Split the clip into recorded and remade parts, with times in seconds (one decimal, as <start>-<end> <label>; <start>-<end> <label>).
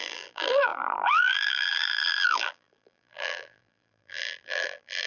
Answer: 0.0-5.1 remade